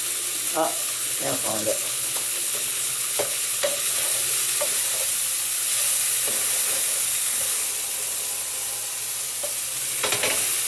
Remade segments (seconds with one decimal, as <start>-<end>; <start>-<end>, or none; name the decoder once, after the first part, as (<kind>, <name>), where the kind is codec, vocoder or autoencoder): 0.8-3.9 (codec, HILCodec)